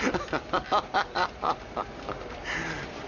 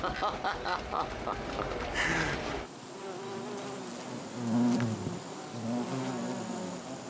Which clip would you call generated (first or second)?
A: first